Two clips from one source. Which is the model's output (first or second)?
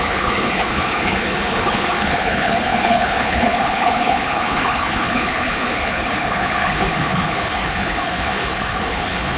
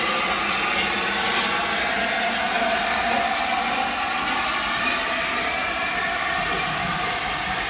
first